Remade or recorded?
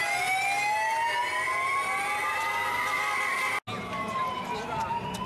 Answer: recorded